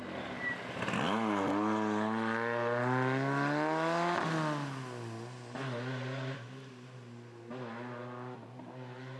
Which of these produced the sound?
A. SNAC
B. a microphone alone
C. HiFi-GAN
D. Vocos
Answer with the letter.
B